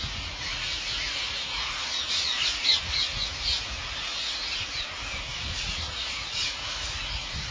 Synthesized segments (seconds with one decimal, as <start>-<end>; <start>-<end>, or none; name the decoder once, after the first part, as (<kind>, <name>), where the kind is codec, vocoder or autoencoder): 0.0-4.5 (vocoder, Vocos); 5.6-7.5